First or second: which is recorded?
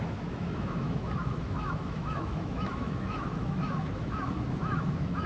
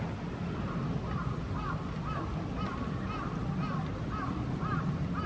second